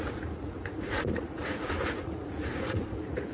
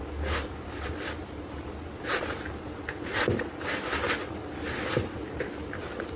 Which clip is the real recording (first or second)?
second